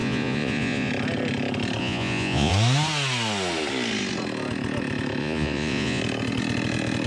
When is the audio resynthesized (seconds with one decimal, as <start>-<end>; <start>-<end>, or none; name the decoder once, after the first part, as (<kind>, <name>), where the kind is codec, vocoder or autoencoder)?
0.0-0.9 (vocoder, Vocos); 1.8-2.5; 5.2-6.0